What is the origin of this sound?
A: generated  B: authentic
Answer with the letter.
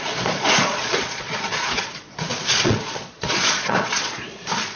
A